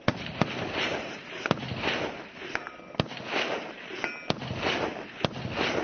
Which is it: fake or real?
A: real